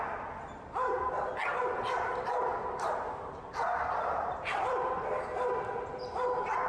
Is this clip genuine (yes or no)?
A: yes